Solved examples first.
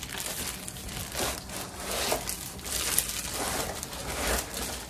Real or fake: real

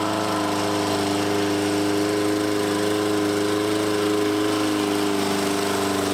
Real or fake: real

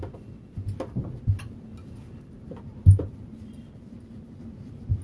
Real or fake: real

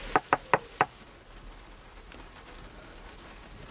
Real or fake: real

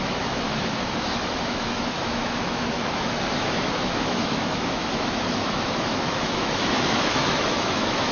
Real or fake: fake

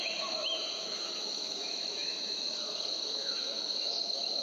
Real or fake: fake